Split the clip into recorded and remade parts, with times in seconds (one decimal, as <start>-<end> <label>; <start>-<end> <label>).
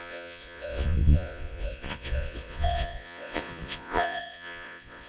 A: 0.0-5.1 remade